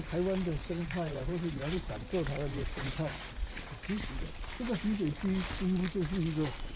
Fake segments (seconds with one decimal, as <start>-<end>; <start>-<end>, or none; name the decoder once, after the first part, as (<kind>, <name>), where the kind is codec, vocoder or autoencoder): 0.6-1.9 (vocoder, Vocos); 2.5-4.3